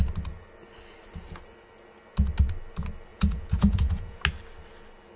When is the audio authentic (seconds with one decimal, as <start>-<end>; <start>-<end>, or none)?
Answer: 0.0-3.1; 4.2-5.2